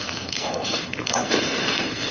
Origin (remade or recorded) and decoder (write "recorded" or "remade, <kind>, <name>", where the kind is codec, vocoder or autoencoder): remade, codec, SNAC